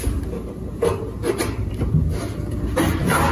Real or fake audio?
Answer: real